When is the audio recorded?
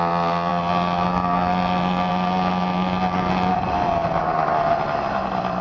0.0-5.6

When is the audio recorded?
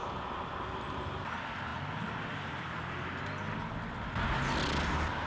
0.0-5.3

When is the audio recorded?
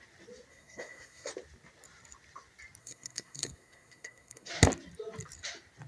0.0-0.5; 1.3-2.8; 4.5-5.9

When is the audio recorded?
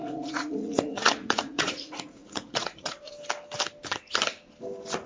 3.1-5.1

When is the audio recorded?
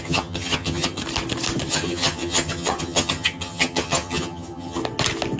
1.0-1.7; 4.8-5.4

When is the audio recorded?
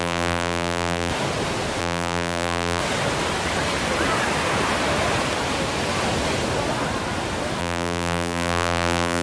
1.1-1.8; 2.8-7.6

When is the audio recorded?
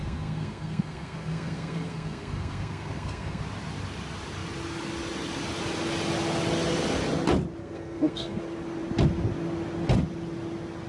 3.4-7.6; 8.4-10.9